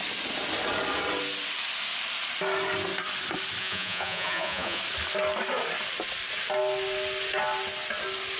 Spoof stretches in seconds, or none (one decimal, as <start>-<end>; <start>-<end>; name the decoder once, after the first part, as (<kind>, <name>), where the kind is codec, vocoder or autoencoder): 3.6-4.8 (vocoder, Vocos)